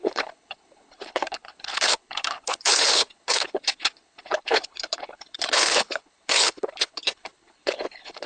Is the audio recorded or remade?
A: remade